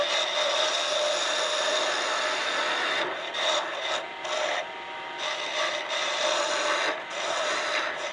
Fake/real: real